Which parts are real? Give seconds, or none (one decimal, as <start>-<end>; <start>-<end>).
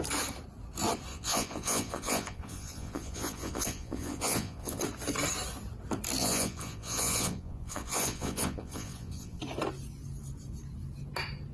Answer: 0.0-1.1; 4.8-6.2; 9.4-11.5